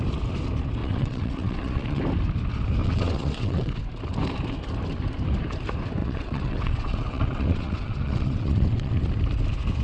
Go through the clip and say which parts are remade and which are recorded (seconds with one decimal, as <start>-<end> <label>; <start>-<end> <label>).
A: 0.0-0.8 recorded; 0.8-2.0 remade; 2.0-2.8 recorded; 2.8-3.8 remade; 3.8-6.0 recorded; 6.0-9.0 remade; 9.0-9.8 recorded